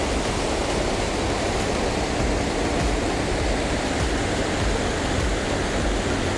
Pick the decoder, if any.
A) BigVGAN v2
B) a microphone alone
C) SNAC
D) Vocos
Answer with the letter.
B